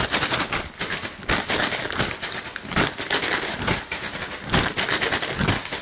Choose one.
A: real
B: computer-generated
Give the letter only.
A